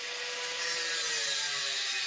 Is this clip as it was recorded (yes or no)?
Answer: yes